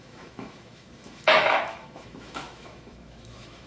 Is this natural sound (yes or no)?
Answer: no